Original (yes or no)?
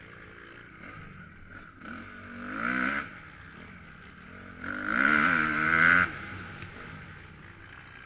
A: yes